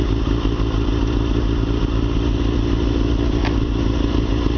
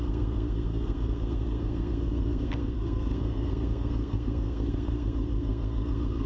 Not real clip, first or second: second